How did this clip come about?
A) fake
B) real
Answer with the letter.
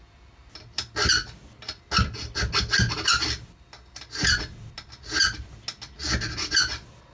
B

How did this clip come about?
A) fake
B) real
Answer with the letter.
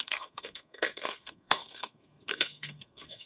A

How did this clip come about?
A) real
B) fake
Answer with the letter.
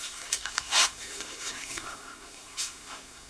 B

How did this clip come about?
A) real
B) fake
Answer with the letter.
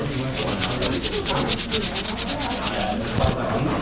A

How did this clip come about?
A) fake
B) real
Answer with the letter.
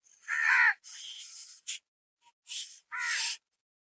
B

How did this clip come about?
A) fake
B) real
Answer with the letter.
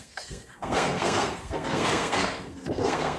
A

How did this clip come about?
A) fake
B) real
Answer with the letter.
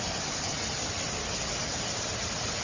B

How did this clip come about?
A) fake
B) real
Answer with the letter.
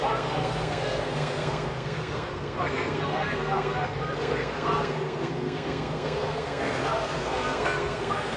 A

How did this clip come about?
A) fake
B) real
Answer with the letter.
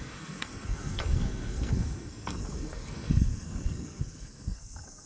A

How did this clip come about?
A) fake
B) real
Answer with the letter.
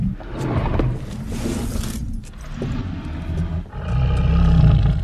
B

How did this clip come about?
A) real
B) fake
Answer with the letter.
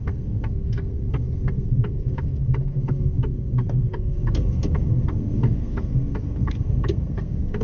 B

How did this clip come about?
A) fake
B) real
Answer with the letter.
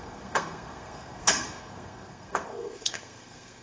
A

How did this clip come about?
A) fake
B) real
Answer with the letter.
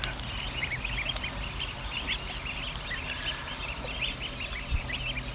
B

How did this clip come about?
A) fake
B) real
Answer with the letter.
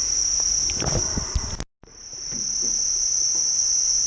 B